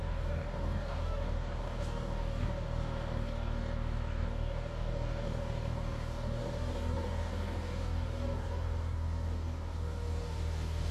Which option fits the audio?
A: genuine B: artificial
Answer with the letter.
B